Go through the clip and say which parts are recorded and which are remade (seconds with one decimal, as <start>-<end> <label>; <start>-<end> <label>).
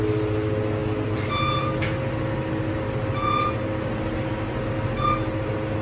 0.0-5.8 recorded